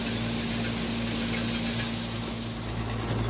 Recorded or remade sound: recorded